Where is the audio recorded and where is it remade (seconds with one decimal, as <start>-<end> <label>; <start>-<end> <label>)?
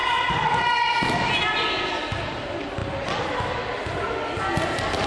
0.0-5.1 recorded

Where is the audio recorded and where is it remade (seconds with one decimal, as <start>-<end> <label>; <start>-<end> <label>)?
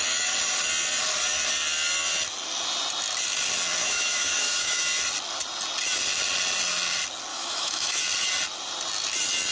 0.0-3.8 recorded; 3.8-4.8 remade; 4.8-7.3 recorded; 7.3-8.0 remade; 8.0-9.5 recorded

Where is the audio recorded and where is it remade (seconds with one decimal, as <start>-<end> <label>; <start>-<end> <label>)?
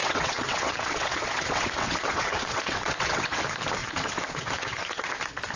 0.0-3.4 remade; 3.4-3.8 recorded; 3.8-5.1 remade; 5.1-5.6 recorded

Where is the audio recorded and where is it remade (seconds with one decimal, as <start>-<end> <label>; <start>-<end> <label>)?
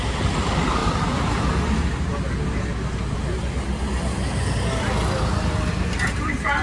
0.0-6.6 recorded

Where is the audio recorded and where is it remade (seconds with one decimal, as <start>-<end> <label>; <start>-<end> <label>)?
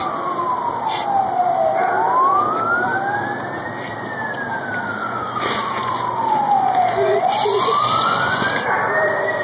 0.0-5.0 recorded; 5.0-8.5 remade; 8.5-9.4 recorded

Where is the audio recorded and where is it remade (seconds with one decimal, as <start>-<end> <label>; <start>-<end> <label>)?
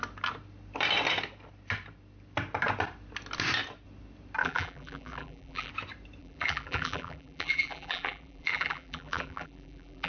0.0-4.4 recorded; 4.4-5.7 remade; 5.7-6.2 recorded; 6.2-10.1 remade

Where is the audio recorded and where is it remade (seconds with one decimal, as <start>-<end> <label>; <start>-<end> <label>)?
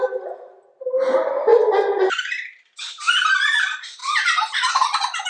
0.0-5.3 recorded